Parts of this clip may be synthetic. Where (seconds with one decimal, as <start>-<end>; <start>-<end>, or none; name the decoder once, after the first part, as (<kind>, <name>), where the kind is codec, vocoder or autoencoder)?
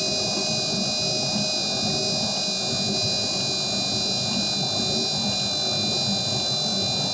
none